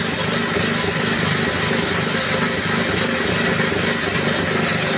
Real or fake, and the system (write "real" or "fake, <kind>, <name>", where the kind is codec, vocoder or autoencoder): real